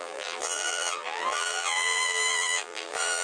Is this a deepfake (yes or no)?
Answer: yes